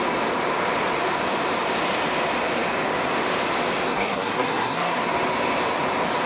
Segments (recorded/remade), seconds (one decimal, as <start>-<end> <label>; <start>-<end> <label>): 0.0-3.9 recorded; 3.9-5.0 remade; 5.0-6.3 recorded

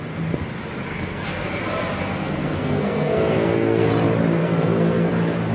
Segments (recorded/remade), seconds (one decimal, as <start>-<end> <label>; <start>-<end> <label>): 0.0-0.9 recorded; 0.9-1.6 remade; 1.6-2.1 recorded; 2.1-3.9 remade; 3.9-4.4 recorded; 4.4-5.1 remade; 5.1-5.5 recorded

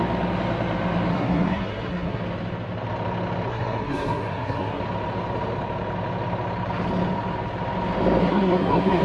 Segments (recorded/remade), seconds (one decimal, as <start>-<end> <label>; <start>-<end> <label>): 0.0-1.1 recorded; 1.1-2.2 remade; 2.2-3.5 recorded; 3.5-4.8 remade; 4.8-8.2 recorded; 8.2-9.0 remade

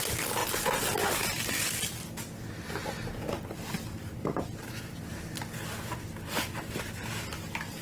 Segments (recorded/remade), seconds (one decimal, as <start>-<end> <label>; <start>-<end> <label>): 0.0-7.8 recorded